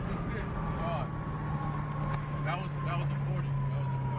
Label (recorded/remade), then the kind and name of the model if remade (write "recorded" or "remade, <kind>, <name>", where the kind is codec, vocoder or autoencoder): recorded